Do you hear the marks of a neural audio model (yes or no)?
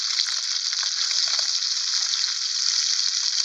no